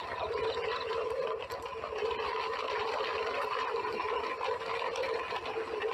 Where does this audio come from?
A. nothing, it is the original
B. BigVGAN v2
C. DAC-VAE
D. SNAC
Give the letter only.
A